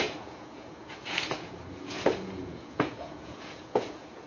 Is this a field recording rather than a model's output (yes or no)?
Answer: no